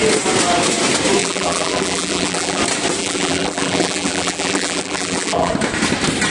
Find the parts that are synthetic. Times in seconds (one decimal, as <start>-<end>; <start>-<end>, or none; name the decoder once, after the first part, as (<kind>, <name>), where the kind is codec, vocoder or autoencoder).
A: 1.2-2.6 (vocoder, BigVGAN v2); 3.0-5.5